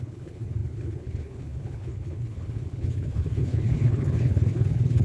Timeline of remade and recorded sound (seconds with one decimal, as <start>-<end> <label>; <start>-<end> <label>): 0.0-5.0 remade